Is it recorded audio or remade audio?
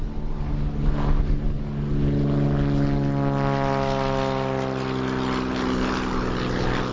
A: recorded